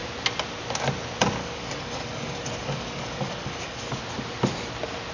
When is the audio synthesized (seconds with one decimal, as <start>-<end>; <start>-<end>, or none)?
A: 1.4-4.0